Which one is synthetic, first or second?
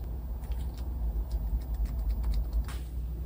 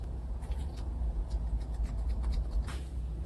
second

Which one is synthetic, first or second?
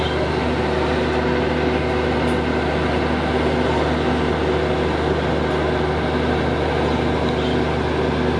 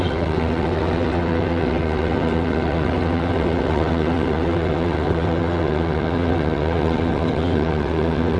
second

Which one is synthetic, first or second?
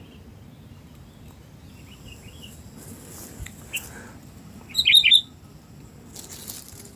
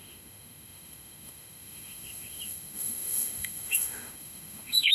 second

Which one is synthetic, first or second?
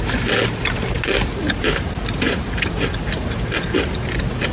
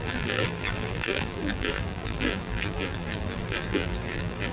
second